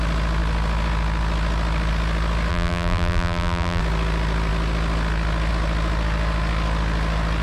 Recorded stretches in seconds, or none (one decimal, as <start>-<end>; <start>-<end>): 0.0-2.5; 3.8-7.4